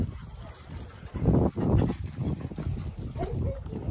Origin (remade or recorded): recorded